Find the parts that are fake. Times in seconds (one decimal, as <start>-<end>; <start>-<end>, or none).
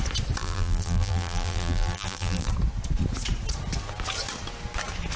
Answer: 0.4-2.5